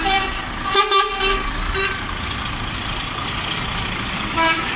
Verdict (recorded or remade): remade